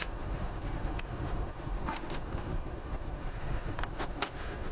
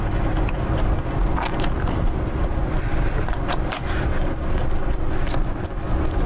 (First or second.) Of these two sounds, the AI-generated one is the first